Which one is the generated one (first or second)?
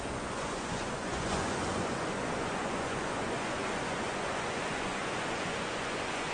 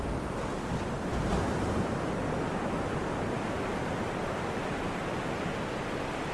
first